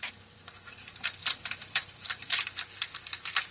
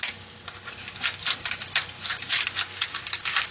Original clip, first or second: second